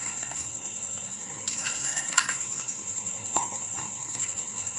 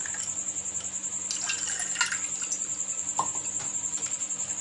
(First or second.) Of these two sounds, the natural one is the second